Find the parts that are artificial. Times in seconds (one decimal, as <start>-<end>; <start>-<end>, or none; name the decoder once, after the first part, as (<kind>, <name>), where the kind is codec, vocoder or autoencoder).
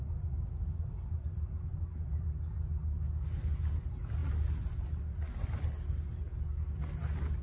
none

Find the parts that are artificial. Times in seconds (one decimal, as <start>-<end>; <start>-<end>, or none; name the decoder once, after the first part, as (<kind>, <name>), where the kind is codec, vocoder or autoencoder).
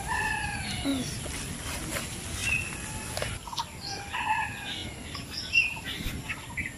0.9-1.9 (vocoder, BigVGAN v2); 2.4-4.1; 4.8-6.8